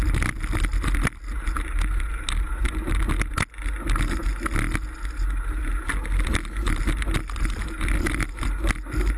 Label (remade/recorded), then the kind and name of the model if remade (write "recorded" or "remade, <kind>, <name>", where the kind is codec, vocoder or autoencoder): recorded